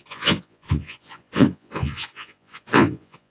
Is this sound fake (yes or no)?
yes